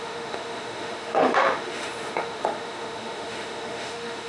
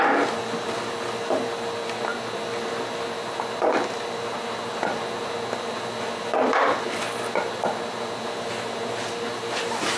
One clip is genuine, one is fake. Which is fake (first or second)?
first